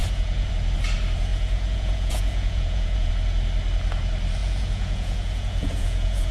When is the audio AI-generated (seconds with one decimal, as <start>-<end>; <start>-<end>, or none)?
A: 0.0-0.5; 1.3-3.1; 4.4-6.3